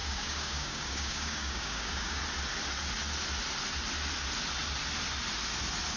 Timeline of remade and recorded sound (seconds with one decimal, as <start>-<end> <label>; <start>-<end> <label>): 0.0-2.2 remade; 2.2-6.0 recorded